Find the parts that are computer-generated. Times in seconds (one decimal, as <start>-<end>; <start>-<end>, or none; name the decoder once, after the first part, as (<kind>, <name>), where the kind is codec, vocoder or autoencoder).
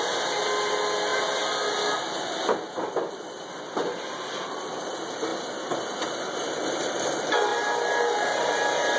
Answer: none